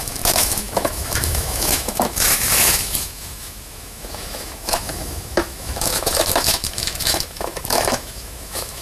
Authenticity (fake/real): fake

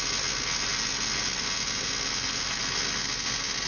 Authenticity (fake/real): real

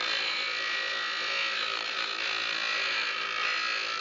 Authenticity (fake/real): real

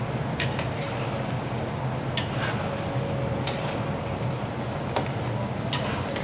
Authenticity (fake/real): real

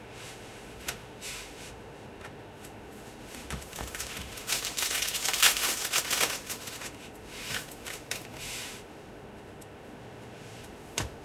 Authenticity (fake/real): fake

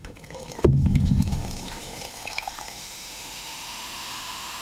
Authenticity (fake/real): fake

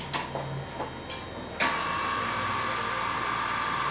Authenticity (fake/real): real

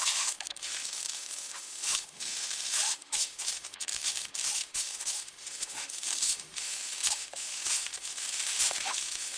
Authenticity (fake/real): fake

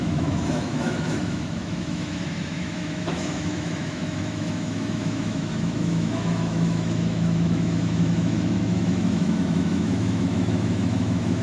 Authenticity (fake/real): fake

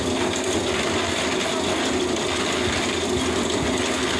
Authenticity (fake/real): real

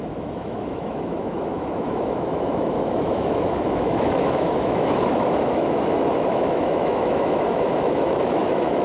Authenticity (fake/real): fake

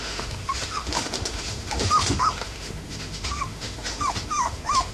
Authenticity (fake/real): fake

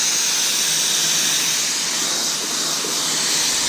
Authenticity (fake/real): real